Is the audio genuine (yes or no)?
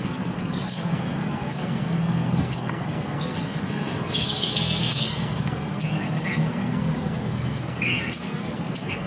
no